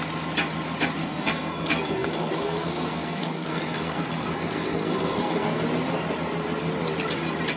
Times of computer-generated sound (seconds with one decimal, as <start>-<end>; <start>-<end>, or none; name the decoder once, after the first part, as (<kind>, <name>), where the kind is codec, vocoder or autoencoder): 1.0-5.6 (codec, SNAC)